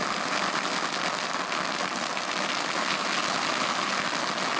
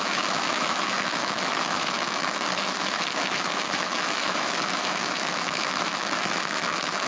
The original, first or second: first